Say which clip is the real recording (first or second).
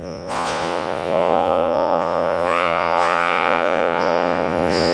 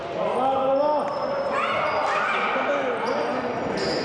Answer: second